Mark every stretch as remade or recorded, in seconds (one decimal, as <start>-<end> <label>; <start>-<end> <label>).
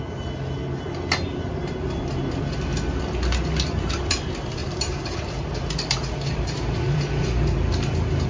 0.0-4.6 recorded; 4.6-7.2 remade; 7.2-8.3 recorded